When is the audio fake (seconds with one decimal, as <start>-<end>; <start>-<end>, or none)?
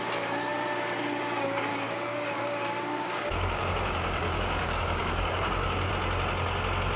1.7-5.9